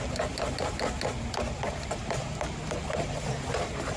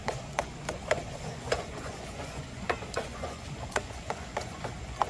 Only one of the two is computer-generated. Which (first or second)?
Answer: second